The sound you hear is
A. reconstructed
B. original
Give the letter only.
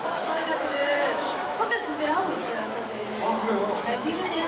A